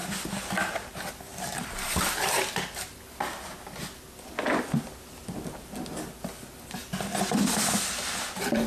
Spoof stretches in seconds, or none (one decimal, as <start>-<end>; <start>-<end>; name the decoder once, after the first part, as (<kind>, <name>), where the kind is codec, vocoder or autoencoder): none